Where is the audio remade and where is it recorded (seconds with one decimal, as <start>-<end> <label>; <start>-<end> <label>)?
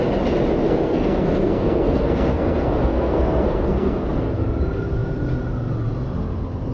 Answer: 0.0-0.6 recorded; 0.6-4.4 remade; 4.4-6.7 recorded